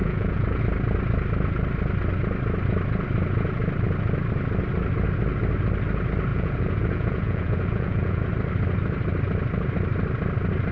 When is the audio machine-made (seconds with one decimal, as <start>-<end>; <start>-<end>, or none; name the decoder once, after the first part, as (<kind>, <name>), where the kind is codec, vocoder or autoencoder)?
0.0-0.6 (vocoder, Vocos); 6.3-8.2